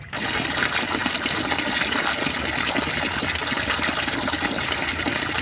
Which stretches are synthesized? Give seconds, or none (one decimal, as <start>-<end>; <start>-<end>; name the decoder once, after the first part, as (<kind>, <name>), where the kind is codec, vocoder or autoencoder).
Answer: none